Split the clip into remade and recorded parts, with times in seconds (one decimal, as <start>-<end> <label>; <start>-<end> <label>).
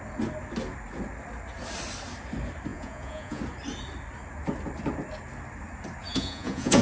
0.0-2.7 recorded; 2.7-3.4 remade; 3.4-6.0 recorded; 6.0-6.8 remade